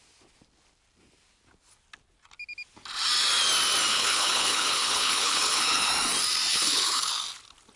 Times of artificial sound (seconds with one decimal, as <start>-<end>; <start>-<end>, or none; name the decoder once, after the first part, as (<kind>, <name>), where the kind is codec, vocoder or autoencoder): 3.9-5.9 (codec, HILCodec); 6.5-7.1